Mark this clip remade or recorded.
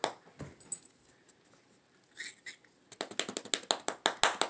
recorded